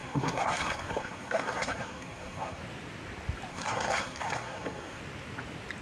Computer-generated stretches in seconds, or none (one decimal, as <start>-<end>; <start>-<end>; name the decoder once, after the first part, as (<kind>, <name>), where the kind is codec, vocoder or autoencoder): 0.0-2.6 (codec, SNAC); 3.5-5.0